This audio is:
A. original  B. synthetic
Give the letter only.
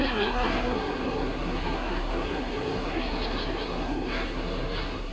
B